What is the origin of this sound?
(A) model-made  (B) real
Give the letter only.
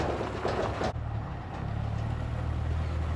B